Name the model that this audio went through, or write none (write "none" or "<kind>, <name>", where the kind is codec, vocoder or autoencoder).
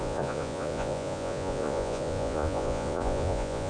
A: vocoder, Vocos